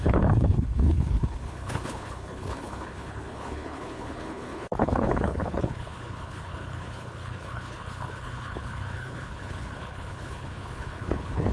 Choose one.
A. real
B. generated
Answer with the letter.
B